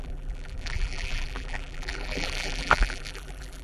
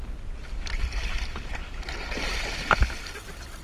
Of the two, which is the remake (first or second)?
first